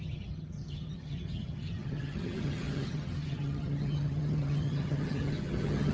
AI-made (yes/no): yes